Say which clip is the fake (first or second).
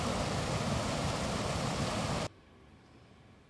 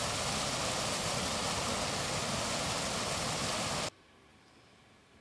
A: first